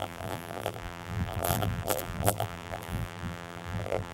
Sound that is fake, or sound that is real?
fake